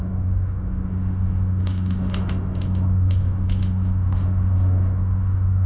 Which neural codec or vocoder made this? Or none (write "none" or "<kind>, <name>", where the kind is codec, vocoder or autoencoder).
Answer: autoencoder, DAC-VAE